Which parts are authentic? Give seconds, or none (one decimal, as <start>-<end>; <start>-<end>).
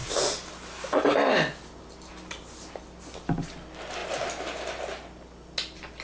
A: 0.0-6.0